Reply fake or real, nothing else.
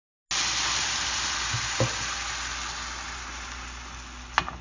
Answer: real